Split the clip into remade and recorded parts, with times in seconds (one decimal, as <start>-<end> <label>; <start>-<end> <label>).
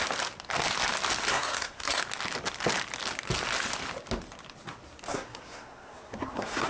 0.0-1.3 recorded; 1.3-2.0 remade; 2.0-5.1 recorded; 5.1-6.7 remade